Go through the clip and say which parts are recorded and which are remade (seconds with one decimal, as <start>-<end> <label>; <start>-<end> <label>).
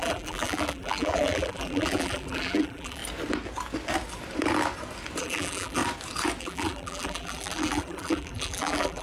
0.0-3.0 remade; 3.0-5.2 recorded; 5.2-5.8 remade; 5.8-6.4 recorded; 6.4-9.0 remade